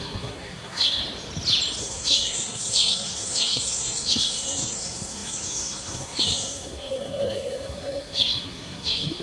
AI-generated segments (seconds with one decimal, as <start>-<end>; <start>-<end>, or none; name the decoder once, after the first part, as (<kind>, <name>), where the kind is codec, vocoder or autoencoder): 0.0-1.0 (codec, SNAC); 1.8-9.2